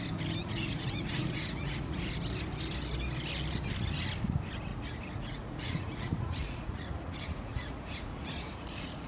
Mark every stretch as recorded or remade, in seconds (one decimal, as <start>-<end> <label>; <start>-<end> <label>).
0.0-0.4 recorded; 0.4-2.1 remade; 2.1-4.7 recorded; 4.7-9.1 remade